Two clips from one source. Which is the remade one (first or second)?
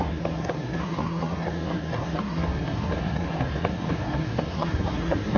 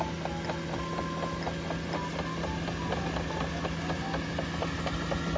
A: first